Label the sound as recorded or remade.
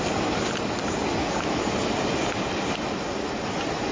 recorded